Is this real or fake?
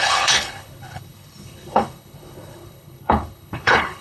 fake